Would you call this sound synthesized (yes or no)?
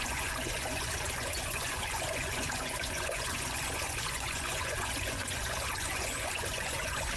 yes